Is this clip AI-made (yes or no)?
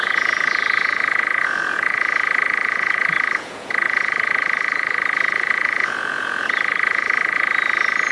yes